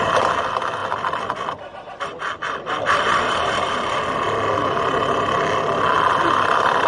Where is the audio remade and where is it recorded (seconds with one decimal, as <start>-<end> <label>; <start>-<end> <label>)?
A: 0.0-6.9 recorded